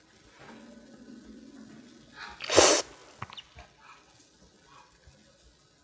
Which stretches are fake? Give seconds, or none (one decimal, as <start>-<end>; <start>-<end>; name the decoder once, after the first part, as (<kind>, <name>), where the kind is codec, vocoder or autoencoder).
none